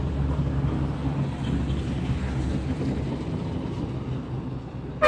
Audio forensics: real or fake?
real